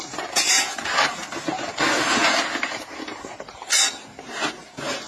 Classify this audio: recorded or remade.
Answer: recorded